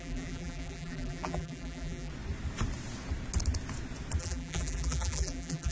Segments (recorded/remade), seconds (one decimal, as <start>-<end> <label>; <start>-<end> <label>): 0.0-2.1 remade; 2.1-4.2 recorded; 4.2-5.7 remade